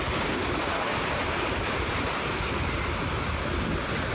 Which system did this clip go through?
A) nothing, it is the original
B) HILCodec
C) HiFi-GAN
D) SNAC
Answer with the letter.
A